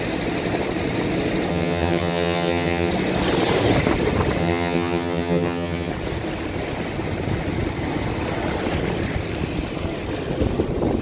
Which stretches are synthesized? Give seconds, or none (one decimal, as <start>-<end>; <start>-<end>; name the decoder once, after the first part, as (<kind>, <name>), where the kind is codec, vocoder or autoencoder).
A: 1.5-2.9 (vocoder, HiFi-GAN); 4.4-5.9